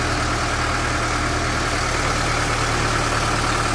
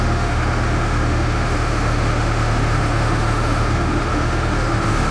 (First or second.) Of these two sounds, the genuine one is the first